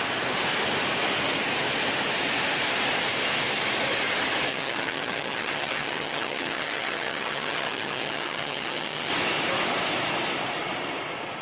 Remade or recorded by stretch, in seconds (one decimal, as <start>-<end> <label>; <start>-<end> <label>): 0.0-4.5 recorded; 4.5-9.1 remade; 9.1-11.4 recorded